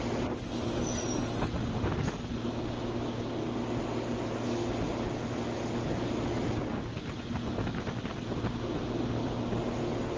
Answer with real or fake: real